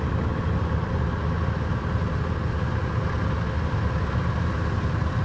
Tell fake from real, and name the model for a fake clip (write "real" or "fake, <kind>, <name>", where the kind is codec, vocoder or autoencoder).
real